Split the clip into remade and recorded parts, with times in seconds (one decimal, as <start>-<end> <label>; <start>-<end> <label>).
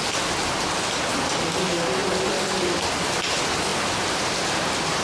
0.0-5.0 recorded